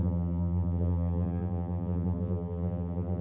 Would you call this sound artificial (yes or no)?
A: yes